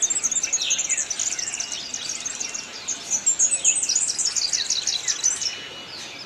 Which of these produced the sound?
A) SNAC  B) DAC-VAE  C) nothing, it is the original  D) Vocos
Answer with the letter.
C